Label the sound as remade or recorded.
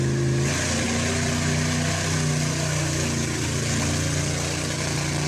recorded